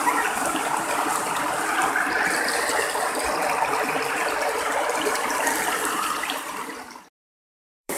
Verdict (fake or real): fake